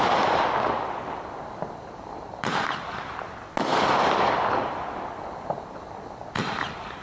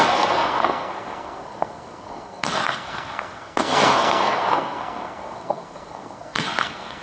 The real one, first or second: first